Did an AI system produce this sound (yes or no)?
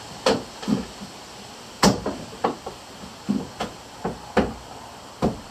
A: no